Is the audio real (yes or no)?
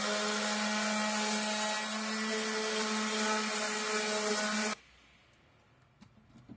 yes